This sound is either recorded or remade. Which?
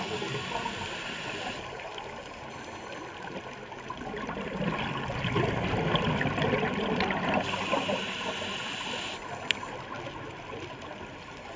recorded